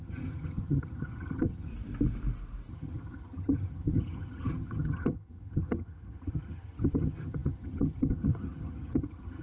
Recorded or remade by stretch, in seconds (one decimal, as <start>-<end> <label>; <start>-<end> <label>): 0.0-1.7 remade; 1.7-2.7 recorded; 2.7-9.4 remade